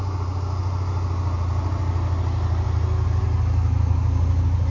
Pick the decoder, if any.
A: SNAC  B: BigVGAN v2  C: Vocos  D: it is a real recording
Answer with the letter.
D